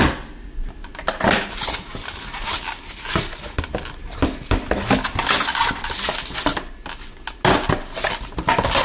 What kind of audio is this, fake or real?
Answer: real